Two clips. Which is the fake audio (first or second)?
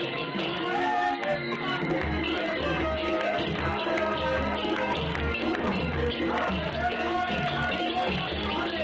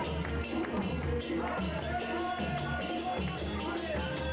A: first